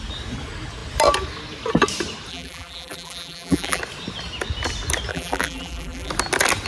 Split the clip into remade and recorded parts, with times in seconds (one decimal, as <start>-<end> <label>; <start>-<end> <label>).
0.0-2.3 recorded; 2.3-3.8 remade; 3.8-5.1 recorded; 5.1-6.1 remade; 6.1-6.7 recorded